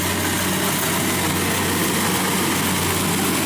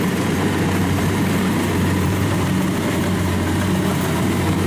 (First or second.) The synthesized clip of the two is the second